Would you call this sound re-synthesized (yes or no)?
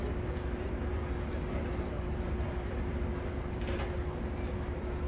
no